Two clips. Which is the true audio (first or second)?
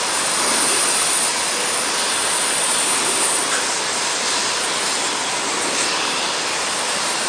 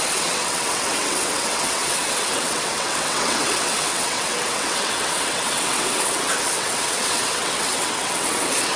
first